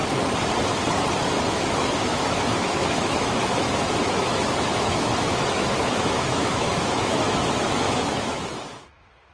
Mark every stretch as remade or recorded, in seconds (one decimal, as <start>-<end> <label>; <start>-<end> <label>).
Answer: 0.0-1.5 recorded; 1.5-9.3 remade